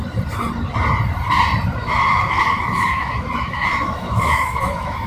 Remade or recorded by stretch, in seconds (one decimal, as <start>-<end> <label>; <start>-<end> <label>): 0.0-1.8 recorded; 1.8-5.1 remade